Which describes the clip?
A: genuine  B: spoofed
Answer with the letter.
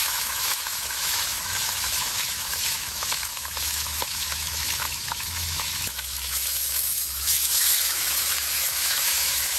B